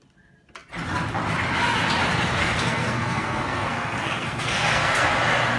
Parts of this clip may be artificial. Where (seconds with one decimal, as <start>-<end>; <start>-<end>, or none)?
2.4-5.1